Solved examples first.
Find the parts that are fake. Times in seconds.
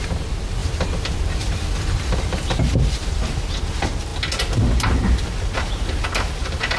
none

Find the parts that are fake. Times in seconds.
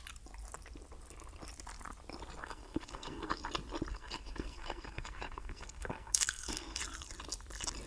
2.4-3.4 (codec, SNAC); 3.9-6.8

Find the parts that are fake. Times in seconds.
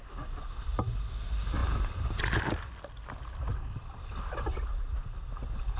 none